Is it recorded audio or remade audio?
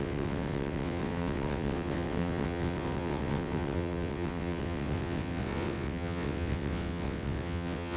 remade